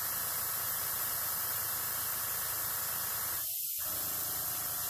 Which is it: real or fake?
real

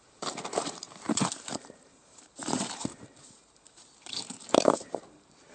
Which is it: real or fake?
fake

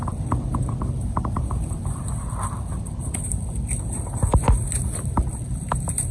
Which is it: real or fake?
real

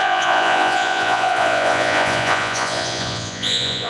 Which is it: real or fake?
fake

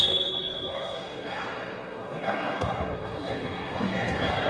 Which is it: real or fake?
fake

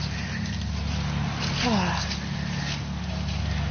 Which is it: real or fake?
real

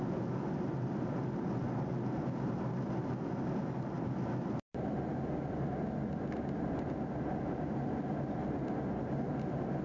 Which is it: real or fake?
real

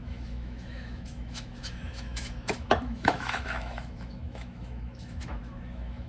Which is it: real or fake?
fake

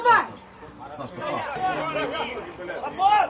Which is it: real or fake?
real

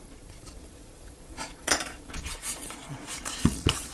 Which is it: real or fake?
fake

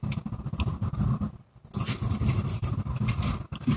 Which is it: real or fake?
real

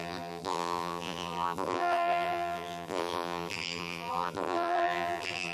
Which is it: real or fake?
fake